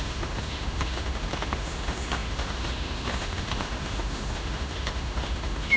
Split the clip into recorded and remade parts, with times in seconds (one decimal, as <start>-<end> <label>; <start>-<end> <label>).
0.0-5.8 remade